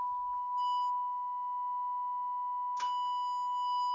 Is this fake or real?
real